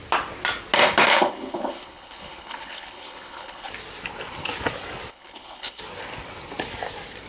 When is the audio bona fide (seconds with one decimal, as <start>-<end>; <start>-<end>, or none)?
0.0-1.1; 3.7-5.1; 5.8-7.3